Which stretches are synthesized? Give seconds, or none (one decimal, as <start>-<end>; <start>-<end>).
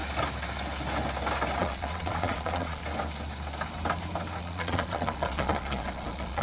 1.6-2.8; 4.4-6.4